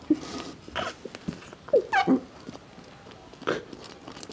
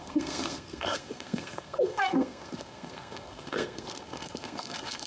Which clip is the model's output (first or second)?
second